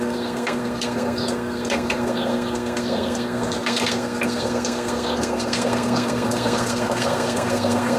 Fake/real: fake